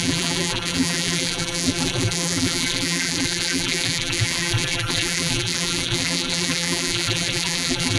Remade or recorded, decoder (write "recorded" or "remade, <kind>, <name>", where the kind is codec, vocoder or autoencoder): remade, vocoder, BigVGAN v2